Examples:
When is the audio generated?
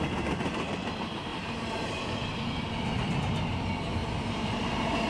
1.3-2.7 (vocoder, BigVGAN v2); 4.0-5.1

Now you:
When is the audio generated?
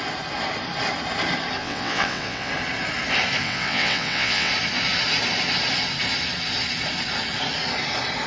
1.6-2.5 (vocoder, WaveNeXt); 3.4-4.5